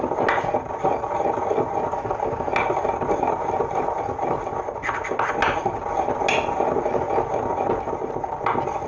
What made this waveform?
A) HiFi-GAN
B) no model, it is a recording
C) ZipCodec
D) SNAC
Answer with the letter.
B